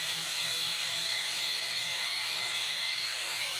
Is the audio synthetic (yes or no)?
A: yes